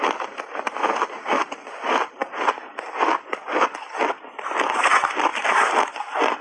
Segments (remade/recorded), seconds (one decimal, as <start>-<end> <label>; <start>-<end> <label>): 0.0-6.4 recorded